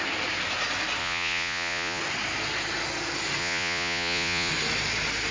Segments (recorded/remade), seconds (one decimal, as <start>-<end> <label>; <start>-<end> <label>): 0.0-1.0 recorded; 1.0-2.0 remade; 2.0-3.4 recorded; 3.4-4.5 remade; 4.5-5.3 recorded